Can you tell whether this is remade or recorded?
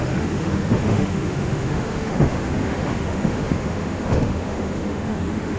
remade